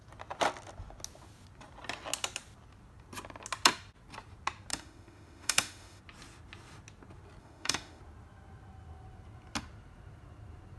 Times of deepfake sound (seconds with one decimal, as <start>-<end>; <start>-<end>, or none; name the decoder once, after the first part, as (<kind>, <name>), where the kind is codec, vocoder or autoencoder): 4.7-6.0 (autoencoder, DAC-VAE); 7.4-8.0

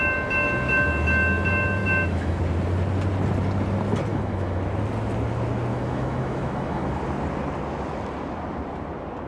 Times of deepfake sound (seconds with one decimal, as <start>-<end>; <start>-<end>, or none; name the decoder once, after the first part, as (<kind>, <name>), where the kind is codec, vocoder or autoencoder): 1.8-2.4 (autoencoder, DAC-VAE); 4.1-4.6; 5.7-7.0

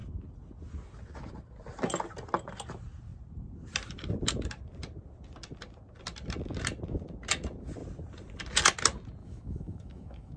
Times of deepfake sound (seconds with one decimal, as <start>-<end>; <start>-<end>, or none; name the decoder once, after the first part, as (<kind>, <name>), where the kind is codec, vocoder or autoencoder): 9.2-10.4 (autoencoder, DAC-VAE)

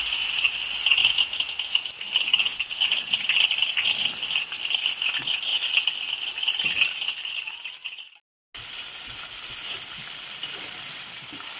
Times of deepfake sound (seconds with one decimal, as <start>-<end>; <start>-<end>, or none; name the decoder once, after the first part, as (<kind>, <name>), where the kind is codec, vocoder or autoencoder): 1.0-2.1 (autoencoder, DAC-VAE)

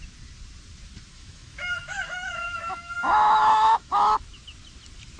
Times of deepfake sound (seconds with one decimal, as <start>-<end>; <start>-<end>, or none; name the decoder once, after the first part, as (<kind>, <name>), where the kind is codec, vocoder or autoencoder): 1.1-4.2 (autoencoder, DAC-VAE)

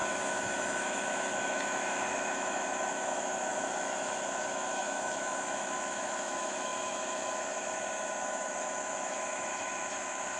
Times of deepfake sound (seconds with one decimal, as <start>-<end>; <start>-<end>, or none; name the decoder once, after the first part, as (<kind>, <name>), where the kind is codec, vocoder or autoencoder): 0.0-10.4 (autoencoder, DAC-VAE)

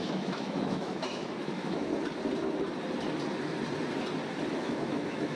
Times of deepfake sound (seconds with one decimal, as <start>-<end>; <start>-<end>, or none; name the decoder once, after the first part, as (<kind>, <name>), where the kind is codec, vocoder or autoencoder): 0.0-1.9 (autoencoder, DAC-VAE); 4.5-5.4

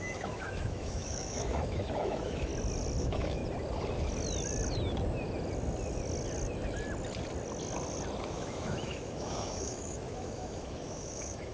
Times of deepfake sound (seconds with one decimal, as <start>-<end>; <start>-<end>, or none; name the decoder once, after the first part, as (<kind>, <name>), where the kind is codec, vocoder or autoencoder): 0.0-2.5 (autoencoder, DAC-VAE); 3.0-3.4; 8.3-11.5